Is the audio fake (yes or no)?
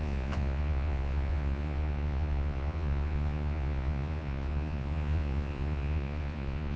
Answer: yes